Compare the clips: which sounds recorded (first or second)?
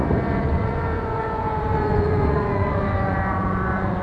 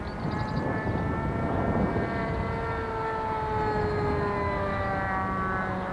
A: second